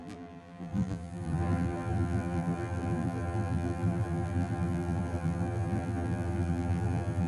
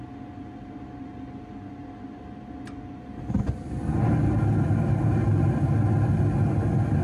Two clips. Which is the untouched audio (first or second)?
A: second